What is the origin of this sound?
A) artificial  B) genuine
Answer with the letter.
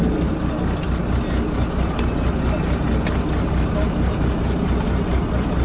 B